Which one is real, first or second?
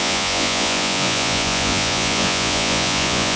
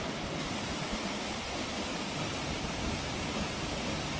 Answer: second